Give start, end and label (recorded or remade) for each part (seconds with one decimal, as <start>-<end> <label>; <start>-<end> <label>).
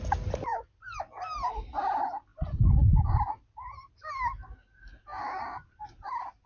0.0-2.3 recorded; 2.3-3.5 remade; 3.5-5.1 recorded; 5.1-6.0 remade; 6.0-6.5 recorded